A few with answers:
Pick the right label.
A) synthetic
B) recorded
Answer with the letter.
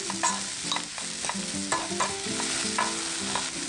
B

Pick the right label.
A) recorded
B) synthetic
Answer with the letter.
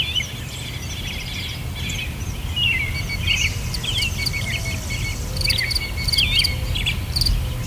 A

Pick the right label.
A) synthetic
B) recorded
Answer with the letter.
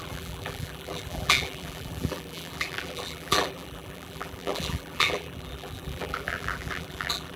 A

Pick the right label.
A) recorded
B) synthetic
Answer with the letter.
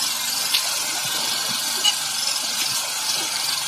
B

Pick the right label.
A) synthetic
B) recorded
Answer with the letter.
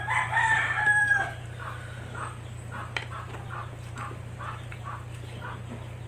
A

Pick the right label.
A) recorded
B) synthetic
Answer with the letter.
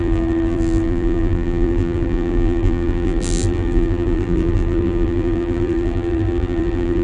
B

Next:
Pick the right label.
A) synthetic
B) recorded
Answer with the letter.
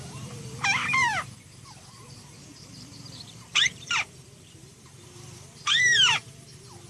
A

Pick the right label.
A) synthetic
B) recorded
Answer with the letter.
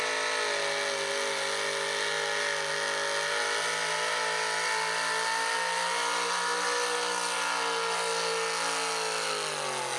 B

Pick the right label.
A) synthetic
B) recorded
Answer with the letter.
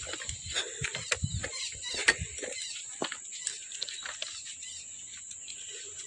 B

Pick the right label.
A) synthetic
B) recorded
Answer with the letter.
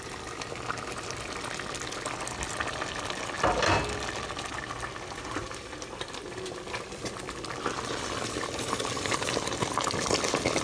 B